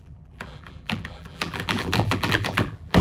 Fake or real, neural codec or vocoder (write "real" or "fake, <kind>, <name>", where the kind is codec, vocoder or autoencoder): fake, vocoder, BigVGAN v2